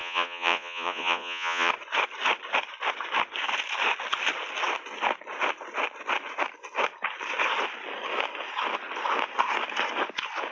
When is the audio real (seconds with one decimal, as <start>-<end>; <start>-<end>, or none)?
1.7-10.5